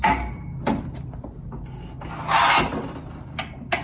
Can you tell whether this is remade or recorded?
recorded